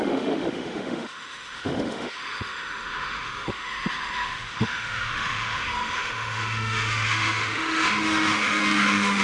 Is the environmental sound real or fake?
fake